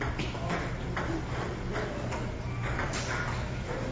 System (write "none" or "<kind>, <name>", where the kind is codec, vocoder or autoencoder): none